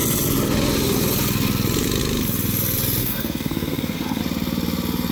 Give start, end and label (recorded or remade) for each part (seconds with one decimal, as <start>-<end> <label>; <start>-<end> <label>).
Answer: 0.0-3.0 recorded; 3.0-4.2 remade; 4.2-5.1 recorded